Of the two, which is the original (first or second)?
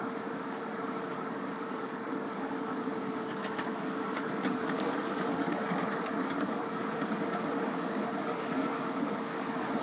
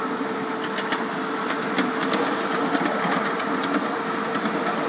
second